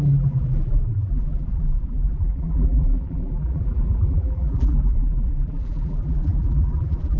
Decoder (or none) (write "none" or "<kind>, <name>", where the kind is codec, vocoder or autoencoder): vocoder, BigVGAN v2